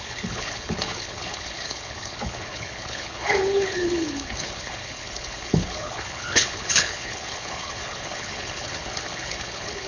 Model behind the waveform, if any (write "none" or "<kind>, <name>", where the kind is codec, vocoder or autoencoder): codec, HILCodec